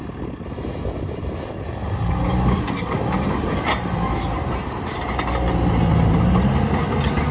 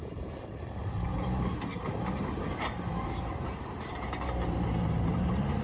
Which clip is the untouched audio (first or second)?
first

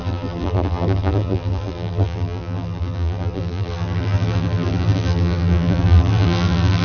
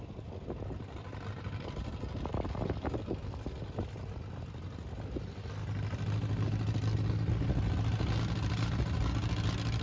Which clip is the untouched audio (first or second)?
second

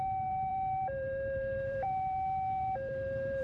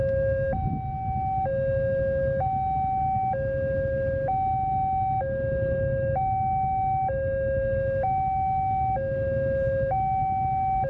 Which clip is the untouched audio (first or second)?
second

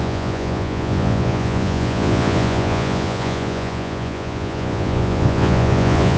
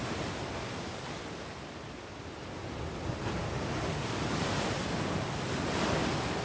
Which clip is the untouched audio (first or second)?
second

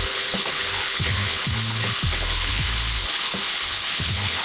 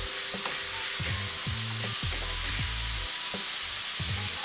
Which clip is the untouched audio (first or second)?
second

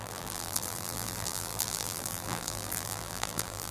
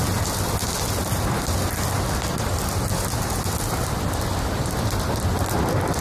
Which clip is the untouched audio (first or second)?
second